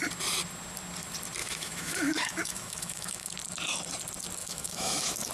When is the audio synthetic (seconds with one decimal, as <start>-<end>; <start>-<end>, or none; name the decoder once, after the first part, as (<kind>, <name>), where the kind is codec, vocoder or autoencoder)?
1.4-3.3 (autoencoder, DAC-VAE); 4.4-5.3